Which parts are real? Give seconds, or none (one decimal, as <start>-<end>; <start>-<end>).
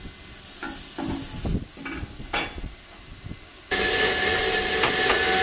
0.0-5.4